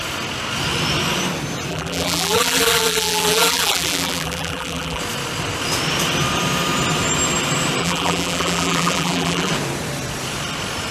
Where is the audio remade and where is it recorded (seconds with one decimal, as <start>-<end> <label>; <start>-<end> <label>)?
0.0-1.7 recorded; 1.7-5.0 remade; 5.0-7.8 recorded; 7.8-9.5 remade; 9.5-10.9 recorded